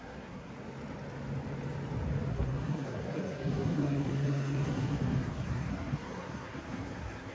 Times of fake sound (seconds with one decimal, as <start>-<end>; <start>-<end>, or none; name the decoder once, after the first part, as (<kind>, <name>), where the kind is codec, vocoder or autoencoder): 0.0-0.5 (codec, SNAC); 2.3-7.3